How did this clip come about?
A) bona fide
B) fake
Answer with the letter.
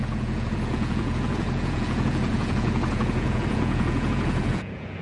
B